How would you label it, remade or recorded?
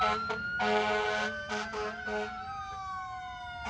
recorded